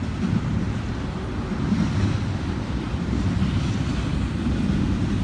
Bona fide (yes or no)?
yes